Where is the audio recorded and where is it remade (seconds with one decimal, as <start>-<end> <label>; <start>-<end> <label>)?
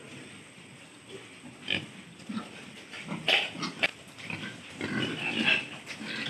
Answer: 0.0-6.3 recorded